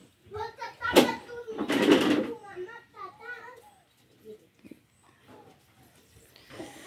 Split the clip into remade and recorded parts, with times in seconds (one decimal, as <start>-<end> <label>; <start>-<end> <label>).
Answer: 0.0-6.9 recorded